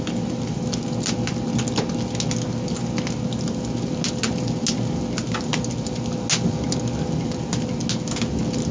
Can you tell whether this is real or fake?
real